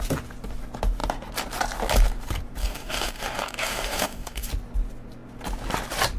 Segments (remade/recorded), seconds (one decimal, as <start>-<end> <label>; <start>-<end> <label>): 0.0-2.6 recorded; 2.6-4.5 remade; 4.5-6.2 recorded